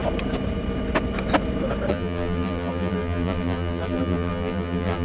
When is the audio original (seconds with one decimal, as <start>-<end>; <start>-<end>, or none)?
0.0-1.9